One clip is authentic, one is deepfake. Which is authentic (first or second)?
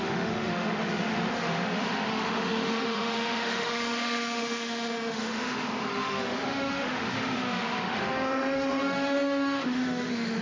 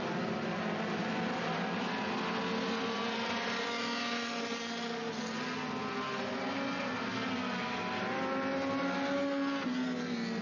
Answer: second